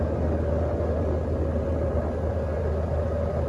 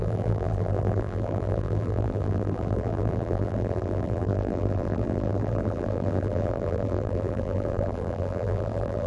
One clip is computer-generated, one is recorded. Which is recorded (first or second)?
first